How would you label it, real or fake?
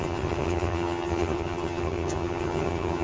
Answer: fake